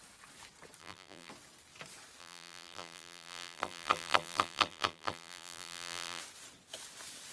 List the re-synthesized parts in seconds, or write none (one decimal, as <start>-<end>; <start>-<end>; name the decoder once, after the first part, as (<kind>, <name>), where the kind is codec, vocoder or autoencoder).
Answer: 0.8-1.3 (vocoder, BigVGAN v2); 2.2-6.2